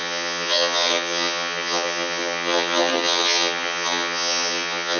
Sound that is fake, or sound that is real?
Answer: fake